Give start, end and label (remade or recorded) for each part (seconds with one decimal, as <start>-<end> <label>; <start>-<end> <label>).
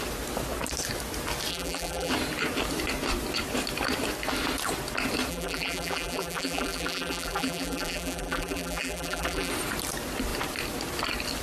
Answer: 0.0-1.5 recorded; 1.5-2.1 remade; 2.1-5.3 recorded; 5.3-9.5 remade; 9.5-11.4 recorded